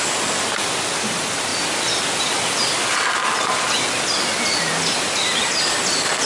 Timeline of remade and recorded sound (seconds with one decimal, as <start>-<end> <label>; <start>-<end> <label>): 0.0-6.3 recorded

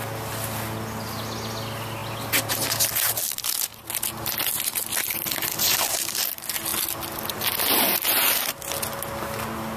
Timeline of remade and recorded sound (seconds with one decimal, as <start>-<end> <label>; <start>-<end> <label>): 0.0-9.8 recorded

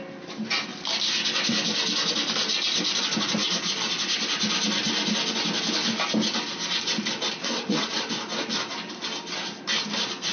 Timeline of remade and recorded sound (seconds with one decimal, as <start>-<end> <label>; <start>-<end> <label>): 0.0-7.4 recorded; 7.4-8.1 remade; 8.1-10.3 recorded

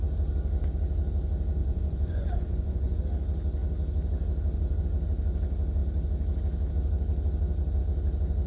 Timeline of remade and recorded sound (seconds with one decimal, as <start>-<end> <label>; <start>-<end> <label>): 0.0-1.6 recorded; 1.6-3.0 remade; 3.0-8.5 recorded

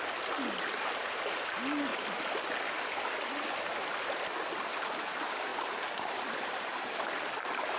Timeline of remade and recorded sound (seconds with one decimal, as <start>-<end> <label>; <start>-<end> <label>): 0.0-1.9 remade; 1.9-4.7 recorded; 4.7-7.8 remade

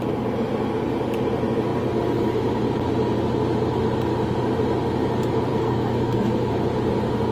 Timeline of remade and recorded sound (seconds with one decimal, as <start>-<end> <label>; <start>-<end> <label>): 0.0-5.5 recorded; 5.5-6.5 remade; 6.5-7.3 recorded

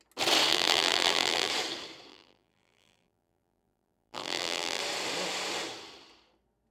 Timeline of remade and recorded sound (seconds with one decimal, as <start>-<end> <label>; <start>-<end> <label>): 0.0-0.5 recorded; 0.5-1.5 remade; 1.5-2.1 recorded; 2.1-4.8 remade; 4.8-6.7 recorded

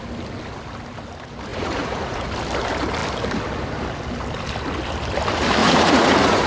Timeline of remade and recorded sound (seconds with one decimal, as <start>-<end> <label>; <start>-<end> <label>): 0.0-1.5 recorded; 1.5-2.3 remade; 2.3-5.6 recorded; 5.6-6.5 remade